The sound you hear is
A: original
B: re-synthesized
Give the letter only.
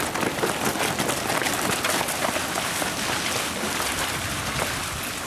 A